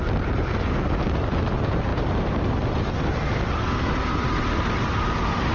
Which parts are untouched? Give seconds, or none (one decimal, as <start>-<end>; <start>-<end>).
0.0-5.5